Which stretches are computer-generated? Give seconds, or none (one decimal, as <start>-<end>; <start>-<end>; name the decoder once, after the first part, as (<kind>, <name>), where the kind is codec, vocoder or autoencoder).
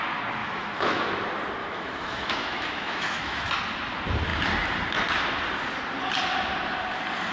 0.4-1.1 (autoencoder, DAC-VAE); 1.6-3.5